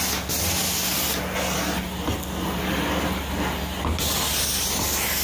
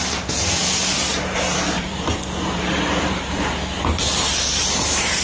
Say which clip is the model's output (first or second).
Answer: second